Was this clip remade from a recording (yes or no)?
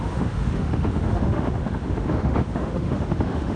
yes